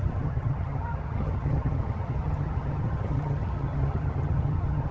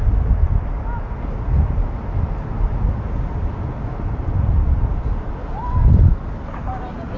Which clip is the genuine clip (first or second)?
second